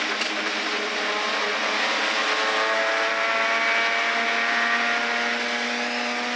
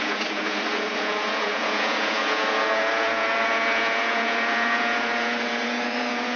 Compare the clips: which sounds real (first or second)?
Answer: first